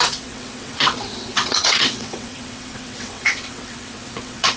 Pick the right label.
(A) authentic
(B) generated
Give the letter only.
B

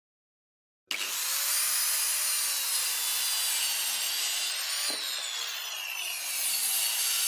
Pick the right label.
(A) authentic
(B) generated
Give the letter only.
A